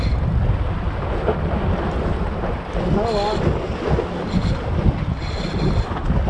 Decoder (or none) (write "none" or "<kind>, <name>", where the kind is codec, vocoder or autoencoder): none